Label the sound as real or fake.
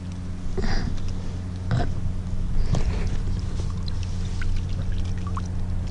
real